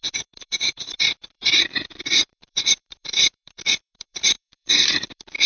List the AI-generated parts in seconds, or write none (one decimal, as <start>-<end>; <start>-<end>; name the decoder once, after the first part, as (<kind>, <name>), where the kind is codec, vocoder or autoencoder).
0.0-5.5 (vocoder, BigVGAN v2)